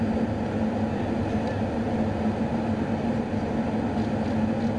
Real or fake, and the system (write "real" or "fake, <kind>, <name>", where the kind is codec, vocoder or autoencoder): real